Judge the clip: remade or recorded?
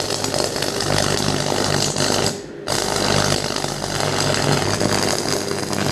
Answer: recorded